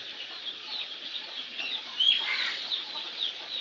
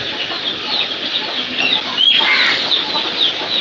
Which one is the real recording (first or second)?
second